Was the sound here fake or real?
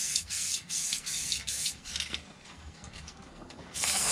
fake